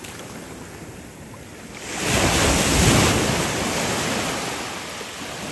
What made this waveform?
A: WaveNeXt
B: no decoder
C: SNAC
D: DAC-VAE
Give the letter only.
B